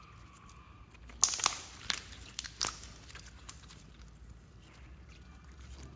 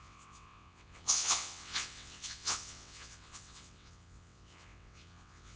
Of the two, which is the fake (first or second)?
second